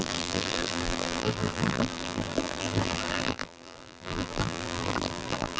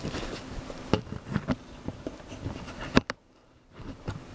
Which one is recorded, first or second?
second